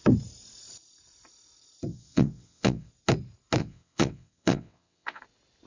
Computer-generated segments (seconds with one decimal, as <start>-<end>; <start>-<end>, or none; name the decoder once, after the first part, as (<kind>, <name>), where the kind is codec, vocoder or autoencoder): 1.9-2.9 (vocoder, WaveNeXt); 3.6-5.2